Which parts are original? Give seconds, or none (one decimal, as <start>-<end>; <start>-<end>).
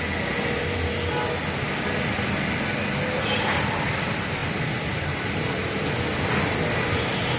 0.0-7.4